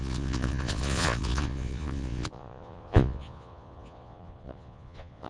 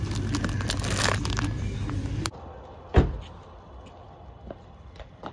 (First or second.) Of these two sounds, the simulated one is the first